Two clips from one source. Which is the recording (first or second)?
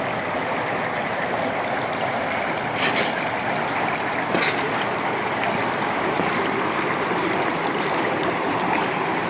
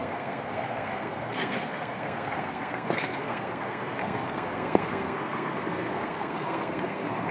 first